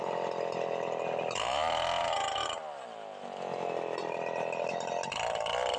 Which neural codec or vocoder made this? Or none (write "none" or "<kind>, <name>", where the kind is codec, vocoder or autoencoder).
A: none